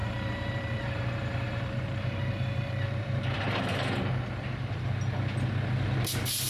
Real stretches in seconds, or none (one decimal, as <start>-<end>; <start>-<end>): 3.9-6.5